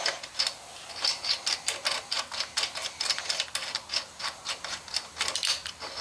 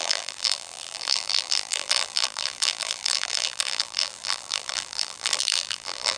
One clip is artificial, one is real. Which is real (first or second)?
first